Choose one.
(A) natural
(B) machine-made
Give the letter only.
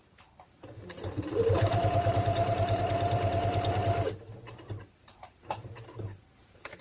B